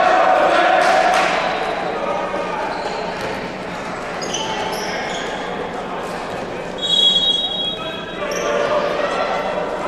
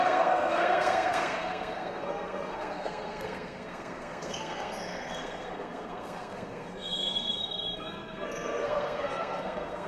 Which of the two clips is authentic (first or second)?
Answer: first